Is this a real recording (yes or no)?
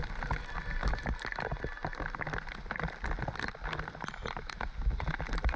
yes